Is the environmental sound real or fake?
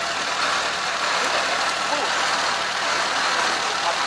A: real